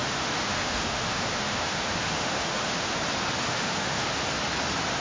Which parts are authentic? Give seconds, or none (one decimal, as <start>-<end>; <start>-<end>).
3.0-3.5; 4.1-5.0